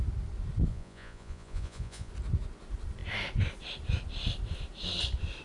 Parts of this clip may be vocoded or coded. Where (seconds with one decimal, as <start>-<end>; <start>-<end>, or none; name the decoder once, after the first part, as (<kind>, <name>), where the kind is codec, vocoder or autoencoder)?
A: 0.7-2.1 (vocoder, Vocos)